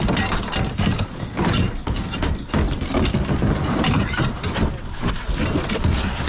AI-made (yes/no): no